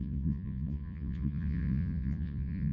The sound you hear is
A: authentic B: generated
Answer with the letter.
B